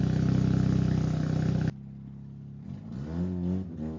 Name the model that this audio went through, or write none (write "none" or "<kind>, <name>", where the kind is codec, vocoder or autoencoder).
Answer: none